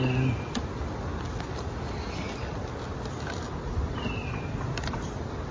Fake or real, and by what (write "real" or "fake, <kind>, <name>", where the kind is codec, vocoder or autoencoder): real